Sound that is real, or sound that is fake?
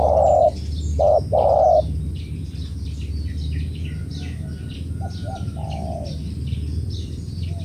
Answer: real